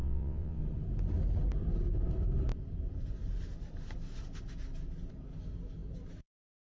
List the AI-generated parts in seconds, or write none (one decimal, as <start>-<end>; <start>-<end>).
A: 0.0-0.6